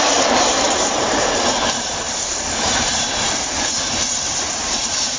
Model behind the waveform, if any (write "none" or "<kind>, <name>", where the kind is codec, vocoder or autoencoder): vocoder, BigVGAN v2